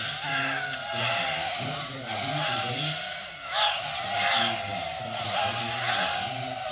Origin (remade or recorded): recorded